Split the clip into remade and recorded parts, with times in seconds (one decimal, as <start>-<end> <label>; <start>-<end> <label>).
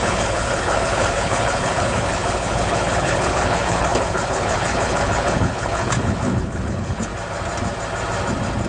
0.0-7.1 remade; 7.1-8.7 recorded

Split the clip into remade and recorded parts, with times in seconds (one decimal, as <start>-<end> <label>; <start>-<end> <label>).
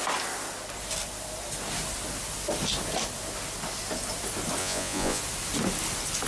0.0-4.6 recorded; 4.6-5.2 remade; 5.2-6.3 recorded